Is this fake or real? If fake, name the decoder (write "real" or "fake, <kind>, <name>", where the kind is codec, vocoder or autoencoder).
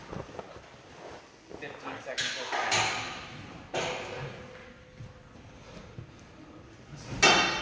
real